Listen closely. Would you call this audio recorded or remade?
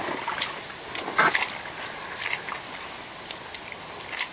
recorded